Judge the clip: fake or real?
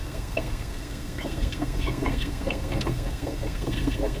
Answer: fake